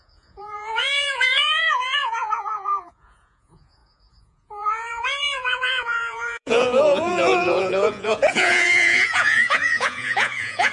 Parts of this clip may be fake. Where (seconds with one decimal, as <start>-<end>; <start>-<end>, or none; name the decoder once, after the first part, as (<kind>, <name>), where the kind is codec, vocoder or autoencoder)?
0.0-10.7 (vocoder, Vocos)